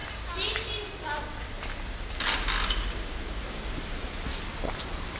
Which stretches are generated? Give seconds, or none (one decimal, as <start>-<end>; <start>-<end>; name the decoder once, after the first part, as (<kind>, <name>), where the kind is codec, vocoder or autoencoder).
none

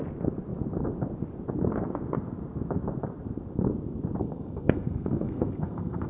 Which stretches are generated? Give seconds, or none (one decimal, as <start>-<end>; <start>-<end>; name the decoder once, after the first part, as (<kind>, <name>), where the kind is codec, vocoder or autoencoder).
4.2-6.1 (codec, SNAC)

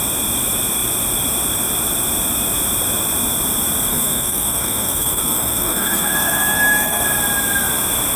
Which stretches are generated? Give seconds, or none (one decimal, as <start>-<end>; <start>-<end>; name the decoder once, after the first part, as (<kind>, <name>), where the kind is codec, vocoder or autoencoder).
3.9-7.0 (codec, SNAC)

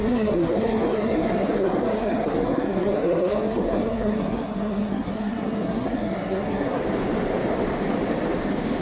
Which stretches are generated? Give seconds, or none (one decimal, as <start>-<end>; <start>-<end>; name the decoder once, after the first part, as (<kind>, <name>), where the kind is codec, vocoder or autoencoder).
0.0-6.8 (codec, SNAC)